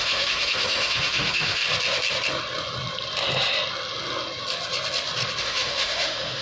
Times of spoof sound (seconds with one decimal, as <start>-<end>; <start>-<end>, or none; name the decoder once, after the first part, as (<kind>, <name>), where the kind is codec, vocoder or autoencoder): 0.0-1.6 (autoencoder, DAC-VAE); 5.4-6.4